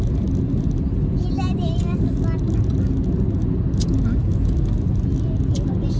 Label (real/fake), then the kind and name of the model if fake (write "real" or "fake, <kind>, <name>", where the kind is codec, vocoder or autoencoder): real